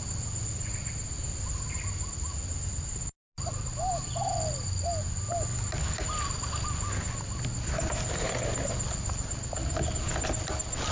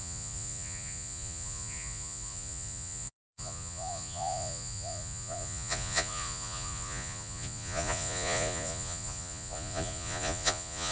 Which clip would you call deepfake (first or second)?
second